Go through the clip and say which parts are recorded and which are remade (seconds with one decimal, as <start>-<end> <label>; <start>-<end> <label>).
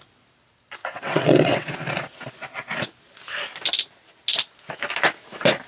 0.0-0.8 recorded; 0.8-1.7 remade; 1.7-5.7 recorded